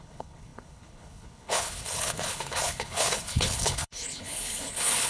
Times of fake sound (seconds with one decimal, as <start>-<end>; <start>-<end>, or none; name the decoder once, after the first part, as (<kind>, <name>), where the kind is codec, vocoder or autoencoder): 0.0-5.1 (codec, HILCodec)